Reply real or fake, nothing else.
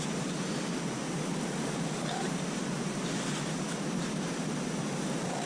fake